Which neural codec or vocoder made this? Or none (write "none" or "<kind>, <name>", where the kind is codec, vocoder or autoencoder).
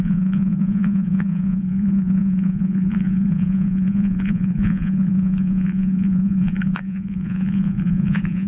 vocoder, Vocos